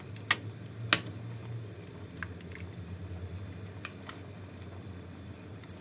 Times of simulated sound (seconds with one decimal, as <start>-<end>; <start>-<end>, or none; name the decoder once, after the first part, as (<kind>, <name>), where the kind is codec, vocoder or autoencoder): none